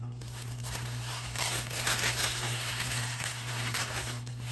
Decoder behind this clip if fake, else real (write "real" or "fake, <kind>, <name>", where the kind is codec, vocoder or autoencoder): fake, codec, SNAC